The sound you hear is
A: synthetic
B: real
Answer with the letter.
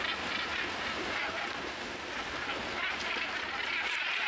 B